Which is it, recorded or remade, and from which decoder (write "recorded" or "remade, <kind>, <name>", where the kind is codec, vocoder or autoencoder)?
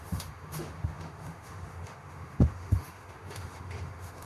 remade, autoencoder, DAC-VAE